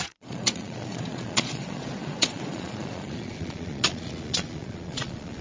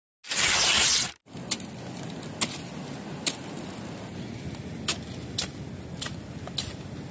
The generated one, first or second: first